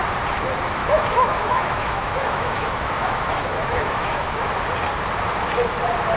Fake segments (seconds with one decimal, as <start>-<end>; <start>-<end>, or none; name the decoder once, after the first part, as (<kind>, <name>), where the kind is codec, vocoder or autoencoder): 0.8-4.5 (autoencoder, DAC-VAE)